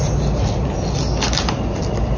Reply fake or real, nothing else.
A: real